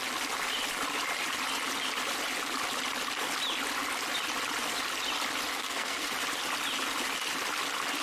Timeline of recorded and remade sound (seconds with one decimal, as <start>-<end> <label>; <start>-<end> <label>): 0.0-5.5 recorded; 5.5-6.1 remade; 6.1-8.0 recorded